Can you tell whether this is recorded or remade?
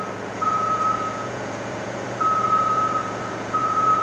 remade